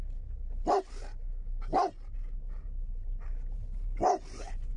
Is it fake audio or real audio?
real